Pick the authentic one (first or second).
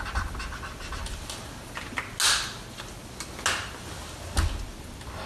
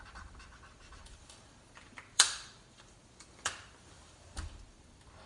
first